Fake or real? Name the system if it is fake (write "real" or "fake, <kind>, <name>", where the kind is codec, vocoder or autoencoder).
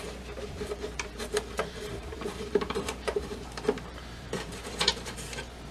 fake, vocoder, BigVGAN v2